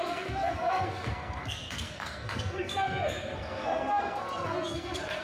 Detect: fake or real fake